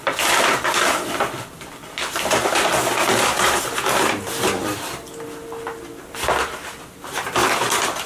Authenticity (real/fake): real